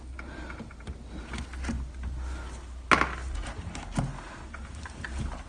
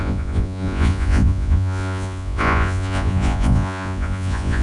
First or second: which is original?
first